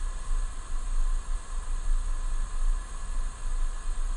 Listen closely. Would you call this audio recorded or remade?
recorded